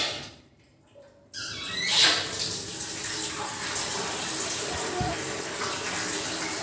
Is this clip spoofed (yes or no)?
no